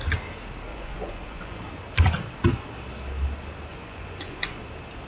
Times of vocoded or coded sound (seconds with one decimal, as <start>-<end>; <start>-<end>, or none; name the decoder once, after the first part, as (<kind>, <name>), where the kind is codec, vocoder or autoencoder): 0.7-1.6 (vocoder, Vocos); 3.7-4.6